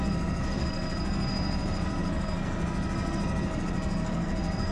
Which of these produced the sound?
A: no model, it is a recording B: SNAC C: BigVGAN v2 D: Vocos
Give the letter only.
B